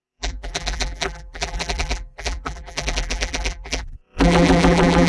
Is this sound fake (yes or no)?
yes